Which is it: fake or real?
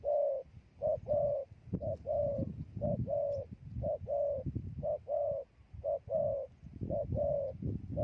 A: real